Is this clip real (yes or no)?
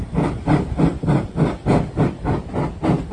yes